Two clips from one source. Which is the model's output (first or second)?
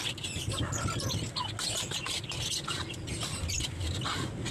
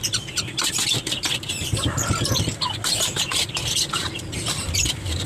second